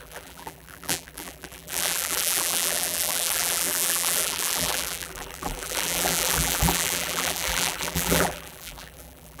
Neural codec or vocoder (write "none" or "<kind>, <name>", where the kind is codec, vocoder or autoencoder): vocoder, BigVGAN v2